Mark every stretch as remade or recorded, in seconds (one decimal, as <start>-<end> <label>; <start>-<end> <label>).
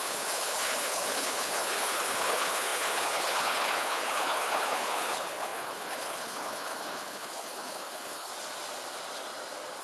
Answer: 0.0-8.3 remade; 8.3-9.8 recorded